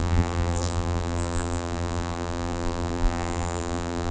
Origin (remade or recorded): remade